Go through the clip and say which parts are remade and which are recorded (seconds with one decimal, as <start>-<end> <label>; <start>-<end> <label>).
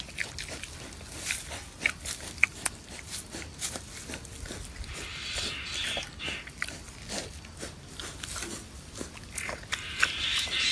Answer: 0.0-10.7 recorded